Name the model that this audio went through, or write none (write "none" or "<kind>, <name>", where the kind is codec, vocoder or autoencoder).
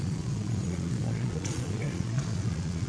vocoder, Vocos